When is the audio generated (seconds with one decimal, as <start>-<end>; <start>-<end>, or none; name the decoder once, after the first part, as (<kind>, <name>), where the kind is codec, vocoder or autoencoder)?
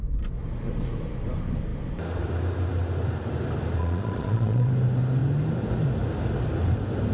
3.8-4.7 (vocoder, Vocos)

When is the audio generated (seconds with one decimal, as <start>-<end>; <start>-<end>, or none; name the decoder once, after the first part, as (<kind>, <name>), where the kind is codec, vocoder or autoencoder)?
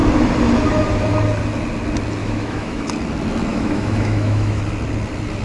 2.2-2.8 (autoencoder, DAC-VAE); 3.5-4.6